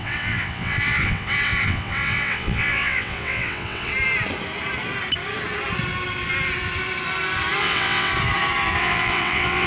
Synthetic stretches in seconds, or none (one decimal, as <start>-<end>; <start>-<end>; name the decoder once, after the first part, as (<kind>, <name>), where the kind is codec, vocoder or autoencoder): 0.0-3.9 (vocoder, WaveNeXt); 7.6-8.1; 8.8-9.7